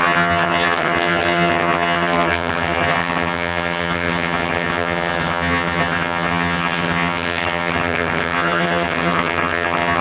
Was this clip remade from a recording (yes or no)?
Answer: yes